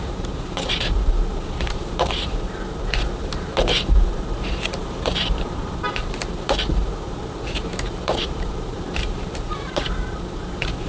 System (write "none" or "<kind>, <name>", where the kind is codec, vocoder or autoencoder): vocoder, BigVGAN v2